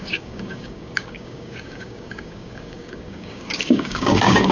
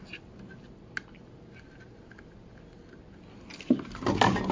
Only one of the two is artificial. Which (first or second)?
first